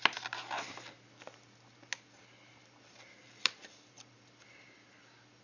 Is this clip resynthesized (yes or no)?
no